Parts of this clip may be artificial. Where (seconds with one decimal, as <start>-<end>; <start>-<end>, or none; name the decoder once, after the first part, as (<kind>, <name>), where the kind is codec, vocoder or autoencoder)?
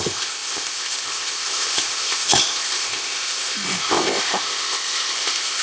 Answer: 0.0-5.6 (codec, ZipCodec)